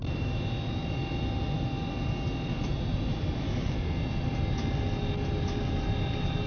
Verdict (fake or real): real